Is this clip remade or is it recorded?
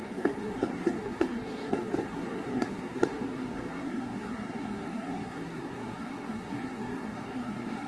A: remade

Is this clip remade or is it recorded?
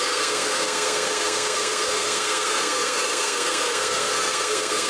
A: remade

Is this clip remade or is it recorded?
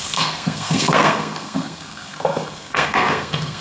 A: remade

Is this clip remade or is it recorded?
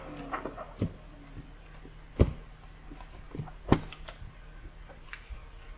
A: recorded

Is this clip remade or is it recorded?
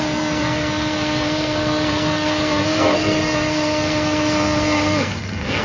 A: remade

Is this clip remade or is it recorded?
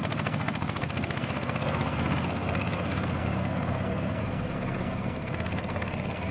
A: remade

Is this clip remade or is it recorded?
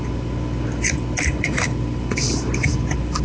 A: recorded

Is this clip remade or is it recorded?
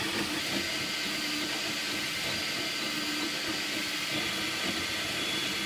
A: recorded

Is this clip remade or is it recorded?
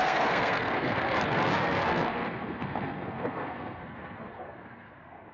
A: remade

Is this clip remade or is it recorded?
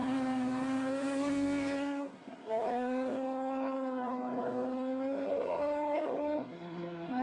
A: remade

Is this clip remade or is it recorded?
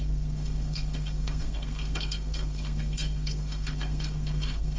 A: remade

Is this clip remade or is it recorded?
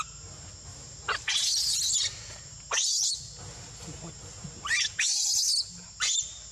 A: recorded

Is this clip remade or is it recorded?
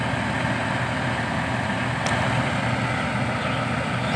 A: recorded